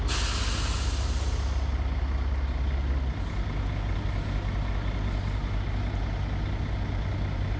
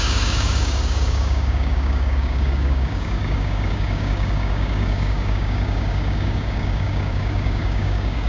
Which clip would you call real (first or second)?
first